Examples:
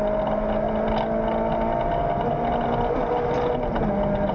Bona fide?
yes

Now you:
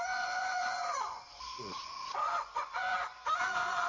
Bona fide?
no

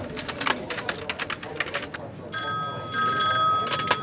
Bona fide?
yes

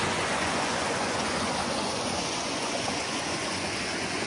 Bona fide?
no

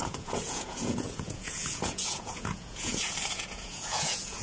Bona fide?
no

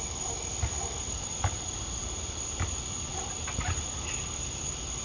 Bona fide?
no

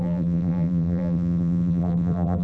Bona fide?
no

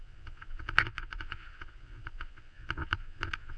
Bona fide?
no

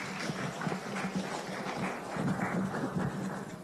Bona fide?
yes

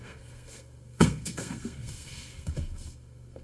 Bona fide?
no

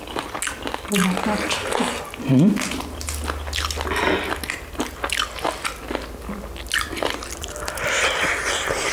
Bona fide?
yes